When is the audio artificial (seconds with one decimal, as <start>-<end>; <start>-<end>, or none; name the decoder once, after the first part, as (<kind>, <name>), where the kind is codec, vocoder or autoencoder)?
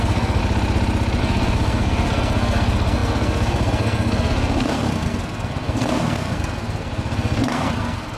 0.0-0.4 (codec, SNAC); 1.2-8.2